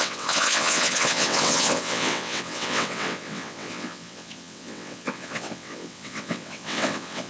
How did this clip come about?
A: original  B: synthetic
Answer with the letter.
B